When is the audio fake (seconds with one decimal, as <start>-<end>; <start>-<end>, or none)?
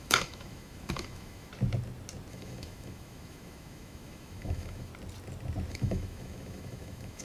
0.0-1.5; 2.3-4.9; 5.7-7.2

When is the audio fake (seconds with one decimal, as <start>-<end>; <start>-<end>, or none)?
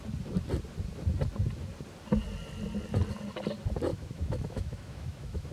3.9-5.5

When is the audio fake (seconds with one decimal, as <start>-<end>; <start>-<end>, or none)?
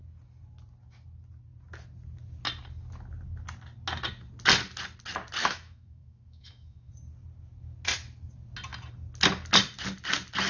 5.4-6.9